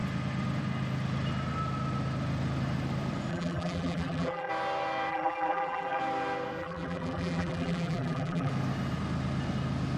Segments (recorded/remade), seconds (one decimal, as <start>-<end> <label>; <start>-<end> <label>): 0.0-3.3 recorded; 3.3-4.5 remade; 4.5-5.1 recorded; 5.1-6.0 remade; 6.0-6.6 recorded; 6.6-8.5 remade; 8.5-10.0 recorded